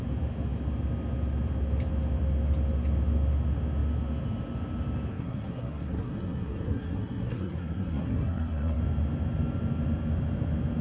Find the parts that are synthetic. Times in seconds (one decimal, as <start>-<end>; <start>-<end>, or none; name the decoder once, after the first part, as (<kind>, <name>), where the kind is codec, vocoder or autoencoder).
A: 5.1-8.8 (codec, SNAC)